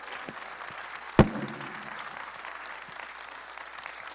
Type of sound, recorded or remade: recorded